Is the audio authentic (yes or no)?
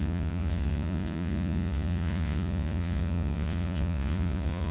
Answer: no